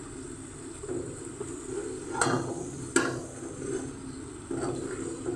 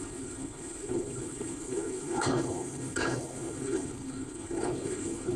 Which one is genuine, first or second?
first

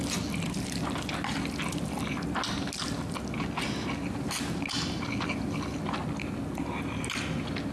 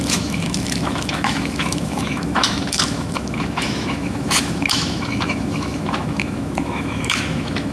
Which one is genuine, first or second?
first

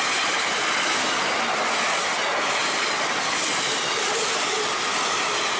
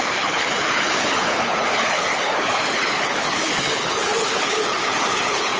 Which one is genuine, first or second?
first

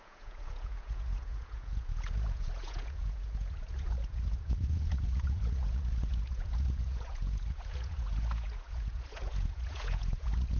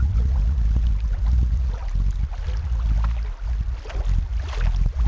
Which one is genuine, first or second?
second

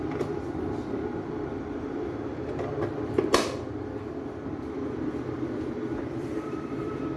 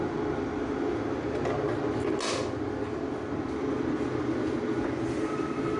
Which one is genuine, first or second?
second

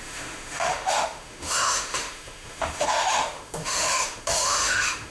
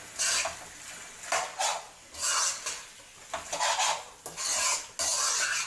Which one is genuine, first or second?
second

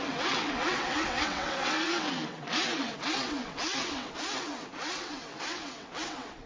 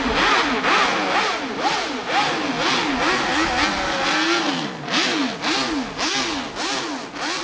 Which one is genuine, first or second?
second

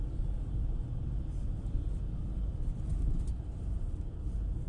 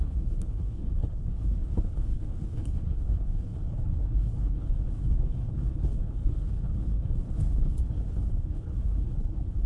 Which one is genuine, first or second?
first